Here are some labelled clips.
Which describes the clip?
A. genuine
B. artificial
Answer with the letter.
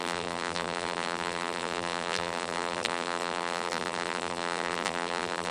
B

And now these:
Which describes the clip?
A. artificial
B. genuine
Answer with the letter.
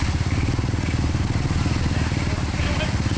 B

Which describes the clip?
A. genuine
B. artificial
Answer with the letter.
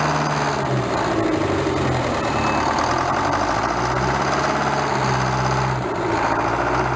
A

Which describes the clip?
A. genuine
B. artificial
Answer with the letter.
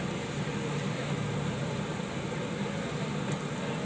A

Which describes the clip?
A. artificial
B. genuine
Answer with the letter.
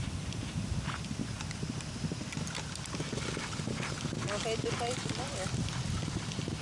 B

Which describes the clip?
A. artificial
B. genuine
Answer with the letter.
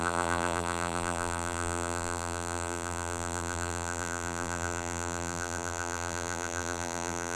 A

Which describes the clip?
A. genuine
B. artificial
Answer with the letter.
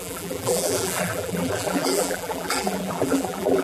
B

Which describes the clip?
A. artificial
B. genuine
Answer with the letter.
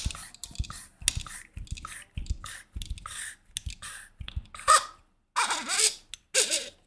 B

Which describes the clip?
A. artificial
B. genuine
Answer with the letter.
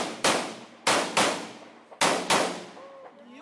B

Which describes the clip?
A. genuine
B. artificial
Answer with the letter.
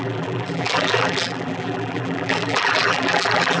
B